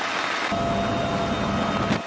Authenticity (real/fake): real